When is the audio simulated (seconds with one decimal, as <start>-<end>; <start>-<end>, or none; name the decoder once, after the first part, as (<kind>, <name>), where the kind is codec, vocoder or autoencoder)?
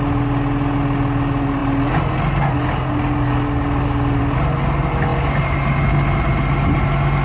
none